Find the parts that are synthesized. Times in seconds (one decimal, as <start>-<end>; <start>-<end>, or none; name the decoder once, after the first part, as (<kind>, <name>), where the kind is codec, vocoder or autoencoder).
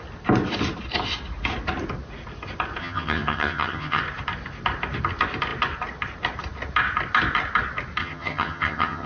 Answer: 2.8-4.0 (vocoder, HiFi-GAN); 8.0-9.1